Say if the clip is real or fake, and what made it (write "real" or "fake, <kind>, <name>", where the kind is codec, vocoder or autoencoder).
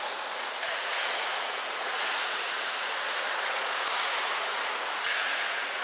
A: fake, vocoder, Vocos